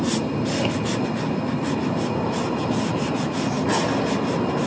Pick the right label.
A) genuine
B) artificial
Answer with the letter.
A